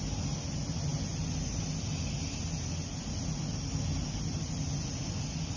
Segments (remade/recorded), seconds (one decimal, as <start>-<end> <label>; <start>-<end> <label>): 0.0-5.6 recorded